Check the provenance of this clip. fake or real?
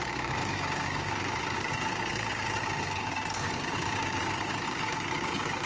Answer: fake